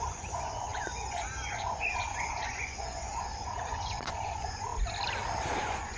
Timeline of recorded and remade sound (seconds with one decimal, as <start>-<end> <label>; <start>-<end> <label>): 0.0-4.7 remade; 4.7-5.6 recorded; 5.6-6.0 remade